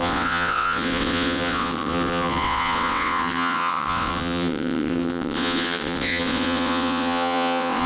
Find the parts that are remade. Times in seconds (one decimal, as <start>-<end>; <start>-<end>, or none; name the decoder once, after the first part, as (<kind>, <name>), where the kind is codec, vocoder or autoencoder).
0.0-7.9 (vocoder, WaveNeXt)